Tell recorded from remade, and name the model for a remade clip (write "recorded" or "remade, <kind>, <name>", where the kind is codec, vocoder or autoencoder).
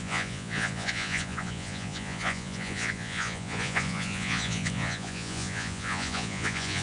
remade, vocoder, Vocos